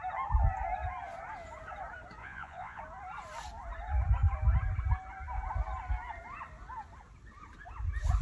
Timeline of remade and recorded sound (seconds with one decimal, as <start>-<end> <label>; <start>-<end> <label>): 0.0-2.2 recorded; 2.2-2.8 remade; 2.8-8.2 recorded